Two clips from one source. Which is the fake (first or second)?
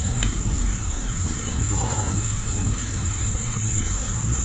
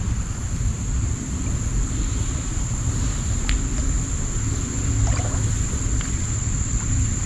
first